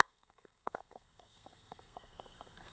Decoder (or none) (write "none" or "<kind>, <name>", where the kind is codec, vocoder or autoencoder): codec, SNAC